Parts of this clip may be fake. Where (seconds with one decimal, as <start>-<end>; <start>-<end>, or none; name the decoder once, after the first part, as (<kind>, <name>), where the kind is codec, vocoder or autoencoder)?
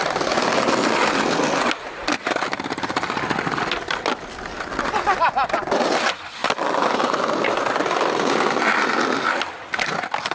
none